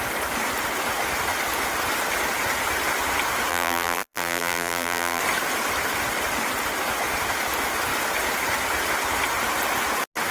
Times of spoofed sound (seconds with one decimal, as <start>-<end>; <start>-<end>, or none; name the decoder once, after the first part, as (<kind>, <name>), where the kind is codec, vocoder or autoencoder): 3.5-5.2 (vocoder, BigVGAN v2)